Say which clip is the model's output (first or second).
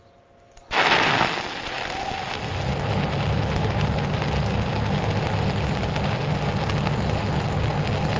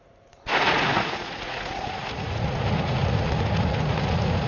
second